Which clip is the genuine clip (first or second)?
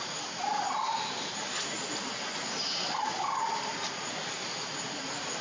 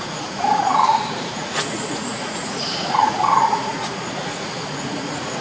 first